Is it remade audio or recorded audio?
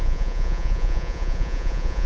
remade